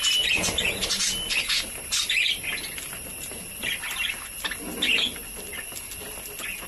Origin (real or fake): real